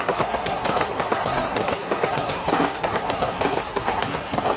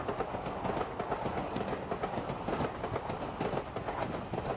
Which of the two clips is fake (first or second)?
first